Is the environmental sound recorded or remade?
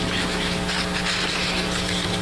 recorded